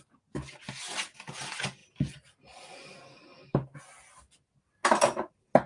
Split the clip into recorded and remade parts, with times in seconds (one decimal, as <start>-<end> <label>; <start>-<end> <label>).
0.0-5.7 recorded